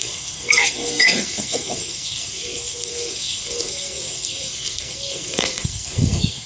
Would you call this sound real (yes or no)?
no